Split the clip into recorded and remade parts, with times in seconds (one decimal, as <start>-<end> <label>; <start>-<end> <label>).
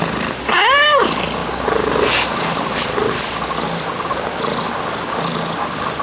0.0-6.0 recorded